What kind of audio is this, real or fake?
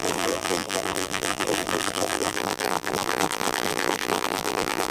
fake